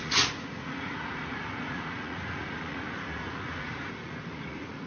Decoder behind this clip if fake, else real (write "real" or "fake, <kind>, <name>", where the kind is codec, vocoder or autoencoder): fake, vocoder, Vocos